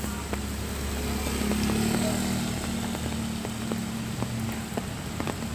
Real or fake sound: real